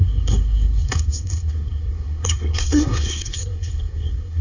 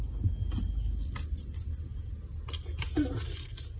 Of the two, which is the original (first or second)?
second